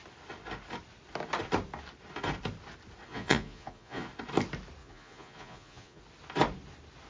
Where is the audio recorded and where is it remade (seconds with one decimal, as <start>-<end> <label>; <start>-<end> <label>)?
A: 0.0-3.1 recorded; 3.1-4.1 remade; 4.1-4.8 recorded; 4.8-6.0 remade; 6.0-7.1 recorded